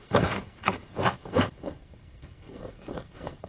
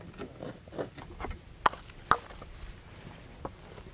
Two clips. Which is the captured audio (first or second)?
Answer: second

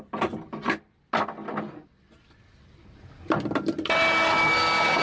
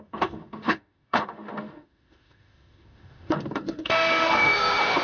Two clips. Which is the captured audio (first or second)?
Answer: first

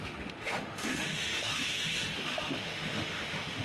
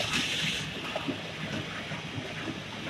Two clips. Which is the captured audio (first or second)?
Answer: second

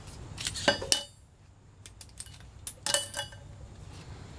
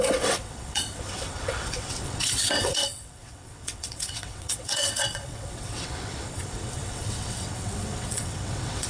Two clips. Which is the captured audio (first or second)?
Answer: first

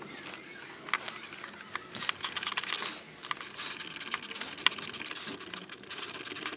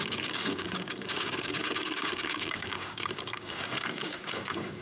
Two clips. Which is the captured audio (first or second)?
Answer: first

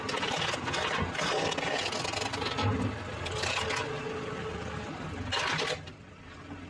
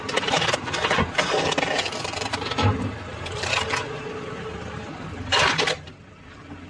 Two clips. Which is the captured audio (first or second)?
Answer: first